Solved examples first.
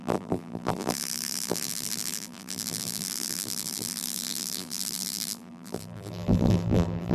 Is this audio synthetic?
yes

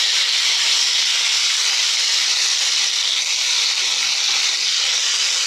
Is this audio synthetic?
no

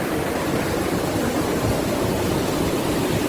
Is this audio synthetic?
no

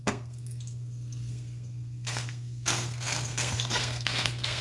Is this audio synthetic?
yes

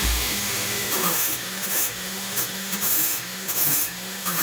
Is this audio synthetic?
yes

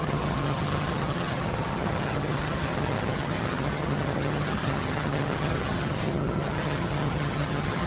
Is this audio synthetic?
yes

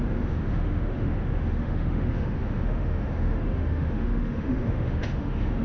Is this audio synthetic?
yes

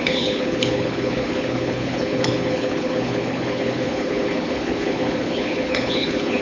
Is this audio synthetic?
yes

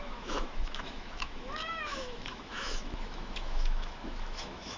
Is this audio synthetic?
yes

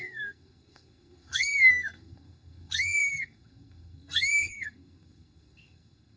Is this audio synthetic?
yes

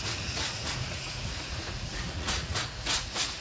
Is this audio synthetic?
yes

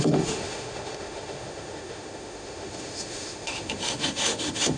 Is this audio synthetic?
yes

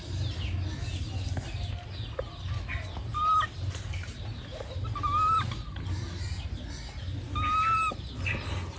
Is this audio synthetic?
no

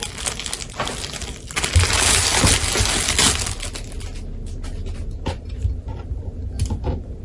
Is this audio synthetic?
no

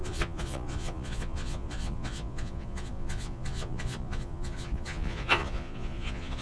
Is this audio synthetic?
yes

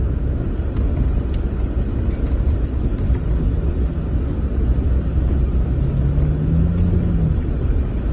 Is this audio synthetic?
no